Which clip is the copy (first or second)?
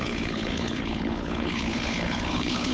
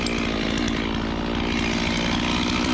first